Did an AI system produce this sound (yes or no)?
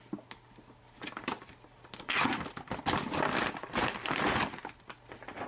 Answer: no